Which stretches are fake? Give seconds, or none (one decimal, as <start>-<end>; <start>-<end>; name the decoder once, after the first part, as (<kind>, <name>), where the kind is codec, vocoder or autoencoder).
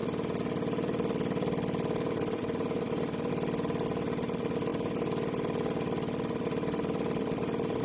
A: 0.0-3.3 (vocoder, BigVGAN v2); 4.7-7.8